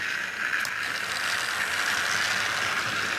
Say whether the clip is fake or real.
real